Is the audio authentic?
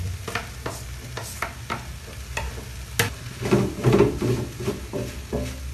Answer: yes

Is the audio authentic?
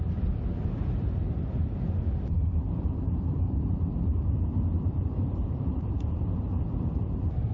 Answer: no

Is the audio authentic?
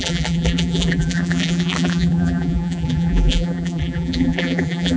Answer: no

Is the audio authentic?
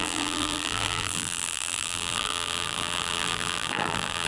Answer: no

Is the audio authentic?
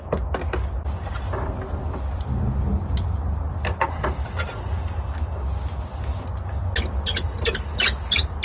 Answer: yes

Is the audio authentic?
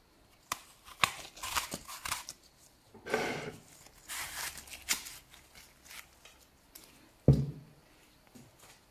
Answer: yes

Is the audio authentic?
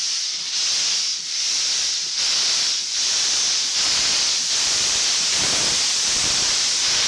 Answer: no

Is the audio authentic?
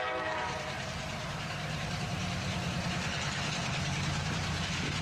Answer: no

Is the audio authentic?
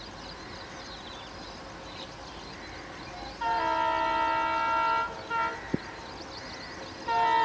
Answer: yes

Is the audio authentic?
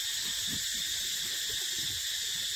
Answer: yes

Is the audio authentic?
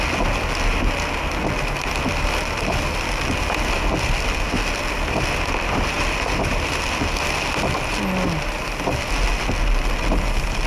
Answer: yes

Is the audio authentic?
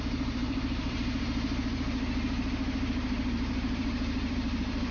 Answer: no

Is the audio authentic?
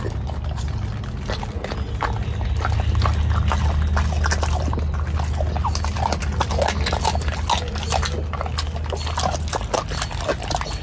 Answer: yes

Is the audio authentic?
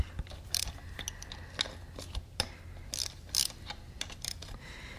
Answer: yes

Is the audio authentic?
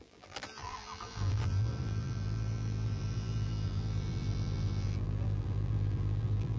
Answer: no